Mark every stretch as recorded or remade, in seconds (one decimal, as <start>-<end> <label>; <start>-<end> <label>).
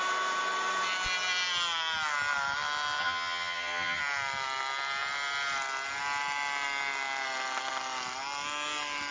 0.0-3.0 recorded; 3.0-4.0 remade; 4.0-9.1 recorded